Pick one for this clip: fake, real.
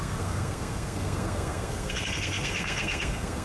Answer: fake